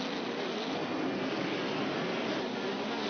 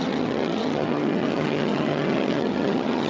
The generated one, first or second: second